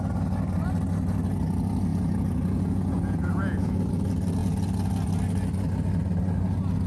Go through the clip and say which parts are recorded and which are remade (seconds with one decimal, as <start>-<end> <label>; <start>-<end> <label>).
0.0-1.9 recorded; 1.9-3.9 remade; 3.9-6.9 recorded